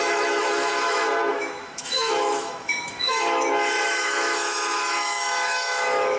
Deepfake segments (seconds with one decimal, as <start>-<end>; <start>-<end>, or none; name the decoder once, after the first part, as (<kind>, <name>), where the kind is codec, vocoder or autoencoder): 0.0-6.2 (autoencoder, DAC-VAE)